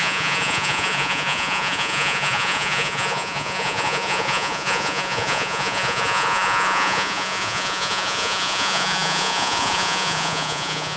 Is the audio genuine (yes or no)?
no